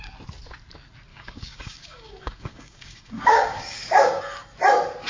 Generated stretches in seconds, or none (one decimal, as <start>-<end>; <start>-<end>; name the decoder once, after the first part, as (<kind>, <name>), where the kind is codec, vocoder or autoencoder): 1.1-4.2 (codec, DAC)